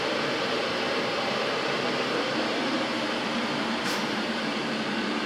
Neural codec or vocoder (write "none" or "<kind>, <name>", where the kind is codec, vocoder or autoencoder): vocoder, BigVGAN v2